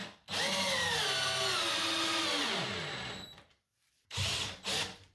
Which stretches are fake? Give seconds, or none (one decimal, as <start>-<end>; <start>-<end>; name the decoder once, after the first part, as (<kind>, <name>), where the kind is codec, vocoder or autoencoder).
3.1-5.1 (vocoder, BigVGAN v2)